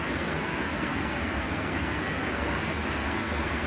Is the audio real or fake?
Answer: fake